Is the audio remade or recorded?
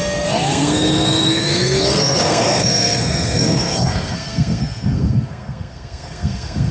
remade